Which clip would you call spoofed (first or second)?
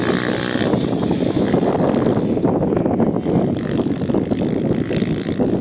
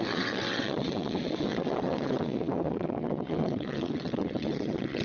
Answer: second